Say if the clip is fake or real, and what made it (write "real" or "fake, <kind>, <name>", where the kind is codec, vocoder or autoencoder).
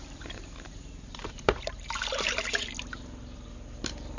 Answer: fake, vocoder, BigVGAN v2